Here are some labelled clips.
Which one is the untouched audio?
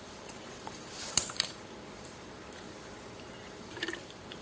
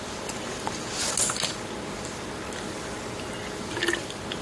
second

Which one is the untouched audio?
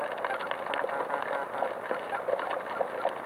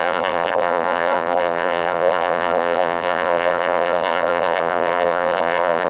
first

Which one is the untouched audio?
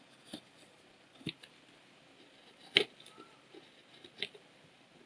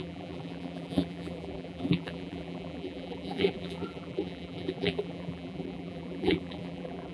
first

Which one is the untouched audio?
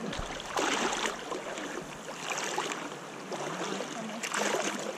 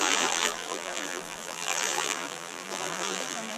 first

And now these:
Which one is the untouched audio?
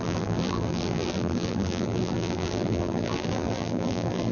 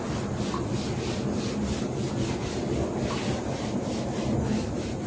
second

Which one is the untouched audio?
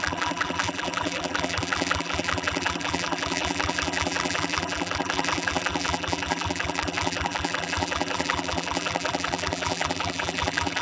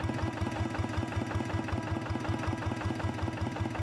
second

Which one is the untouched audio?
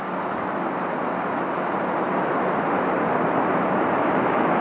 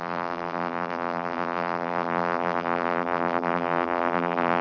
first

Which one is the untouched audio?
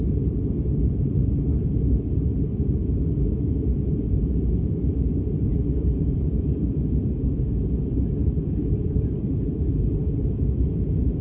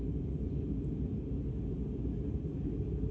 second